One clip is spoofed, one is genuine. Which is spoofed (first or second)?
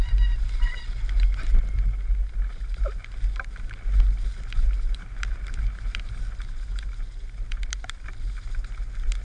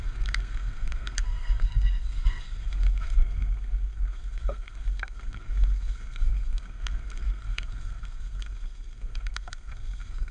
second